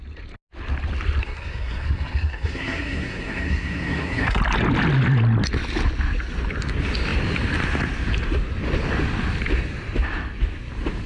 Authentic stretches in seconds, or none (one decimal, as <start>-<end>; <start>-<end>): 0.0-1.2; 4.4-11.1